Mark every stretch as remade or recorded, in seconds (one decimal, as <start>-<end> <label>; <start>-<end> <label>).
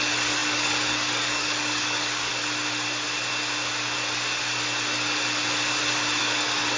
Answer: 0.0-2.3 remade; 2.3-6.2 recorded; 6.2-6.8 remade